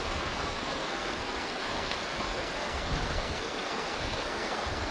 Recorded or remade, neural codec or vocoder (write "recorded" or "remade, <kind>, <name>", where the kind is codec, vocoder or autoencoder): remade, codec, SNAC